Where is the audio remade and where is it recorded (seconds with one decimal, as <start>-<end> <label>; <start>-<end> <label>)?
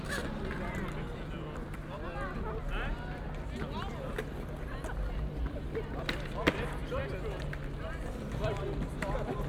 0.0-9.5 recorded